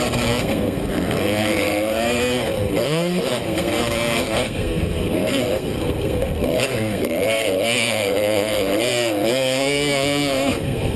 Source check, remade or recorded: remade